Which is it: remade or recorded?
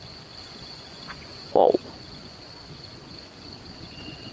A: remade